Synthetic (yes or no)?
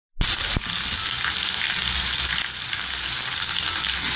no